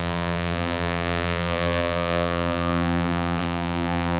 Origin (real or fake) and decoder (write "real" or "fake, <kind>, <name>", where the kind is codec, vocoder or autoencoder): fake, vocoder, BigVGAN v2